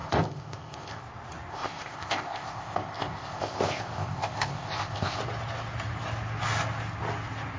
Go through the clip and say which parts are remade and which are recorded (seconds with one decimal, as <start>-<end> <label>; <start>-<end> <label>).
0.0-1.0 remade; 1.0-1.5 recorded; 1.5-5.2 remade; 5.2-7.6 recorded